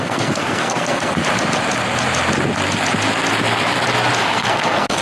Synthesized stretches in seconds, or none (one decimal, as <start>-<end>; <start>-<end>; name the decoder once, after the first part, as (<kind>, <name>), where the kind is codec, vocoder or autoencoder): 0.0-1.2 (codec, SNAC); 4.2-5.0